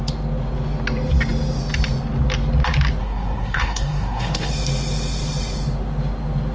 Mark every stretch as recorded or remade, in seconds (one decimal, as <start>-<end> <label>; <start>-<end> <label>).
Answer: 0.0-3.0 recorded; 3.0-4.5 remade; 4.5-6.5 recorded